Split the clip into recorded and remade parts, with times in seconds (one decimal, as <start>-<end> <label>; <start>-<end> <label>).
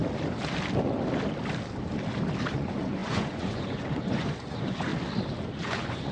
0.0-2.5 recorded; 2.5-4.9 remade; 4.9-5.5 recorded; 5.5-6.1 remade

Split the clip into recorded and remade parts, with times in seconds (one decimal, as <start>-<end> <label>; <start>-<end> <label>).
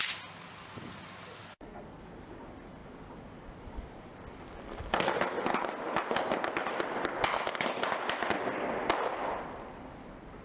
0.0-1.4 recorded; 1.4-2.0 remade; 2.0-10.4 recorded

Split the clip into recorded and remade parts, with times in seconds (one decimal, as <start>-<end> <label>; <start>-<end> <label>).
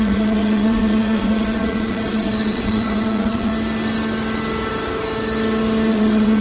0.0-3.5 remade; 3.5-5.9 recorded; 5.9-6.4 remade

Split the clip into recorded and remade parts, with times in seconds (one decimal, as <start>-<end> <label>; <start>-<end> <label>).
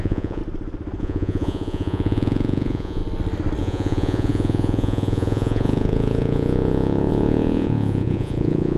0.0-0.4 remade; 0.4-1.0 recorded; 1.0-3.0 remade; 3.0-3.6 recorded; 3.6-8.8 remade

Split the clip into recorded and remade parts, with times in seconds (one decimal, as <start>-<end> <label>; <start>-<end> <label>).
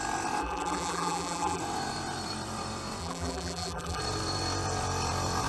0.0-0.4 recorded; 0.4-1.6 remade; 1.6-3.0 recorded; 3.0-4.0 remade; 4.0-5.5 recorded